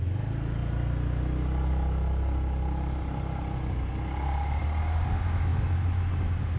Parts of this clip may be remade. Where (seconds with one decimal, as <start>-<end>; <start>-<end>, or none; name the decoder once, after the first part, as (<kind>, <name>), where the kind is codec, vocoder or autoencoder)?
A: none